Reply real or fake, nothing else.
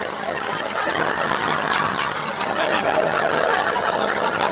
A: fake